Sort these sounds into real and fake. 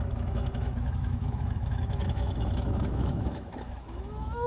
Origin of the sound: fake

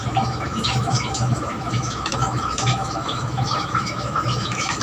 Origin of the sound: fake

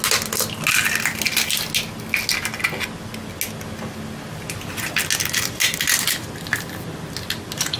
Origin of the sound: real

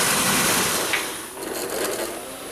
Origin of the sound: real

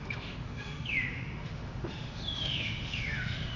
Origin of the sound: fake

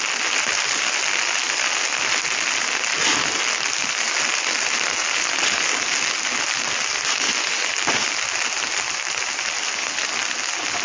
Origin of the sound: real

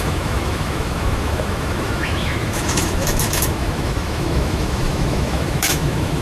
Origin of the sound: fake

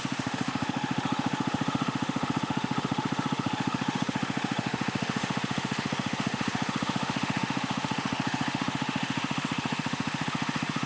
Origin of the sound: fake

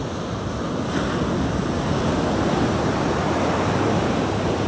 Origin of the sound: real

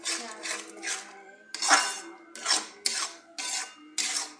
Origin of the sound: real